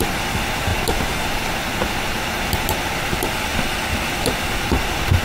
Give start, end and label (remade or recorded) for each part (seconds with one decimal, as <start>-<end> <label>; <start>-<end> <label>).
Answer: 0.0-5.2 recorded